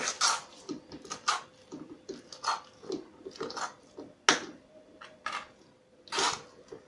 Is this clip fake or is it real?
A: real